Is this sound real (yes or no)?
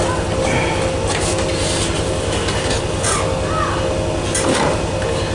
yes